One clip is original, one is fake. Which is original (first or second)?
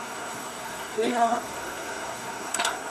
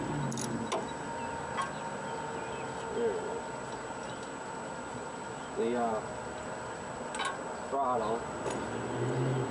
second